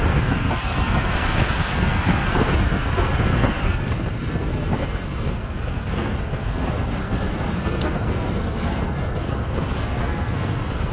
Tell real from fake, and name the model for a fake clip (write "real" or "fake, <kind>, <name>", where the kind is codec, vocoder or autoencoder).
fake, codec, SNAC